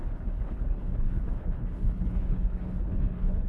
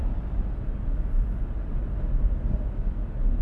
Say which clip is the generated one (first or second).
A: first